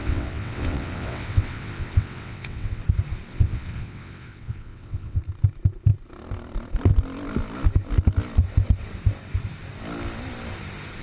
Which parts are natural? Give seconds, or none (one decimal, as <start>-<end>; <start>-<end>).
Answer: 2.8-3.3; 5.2-11.0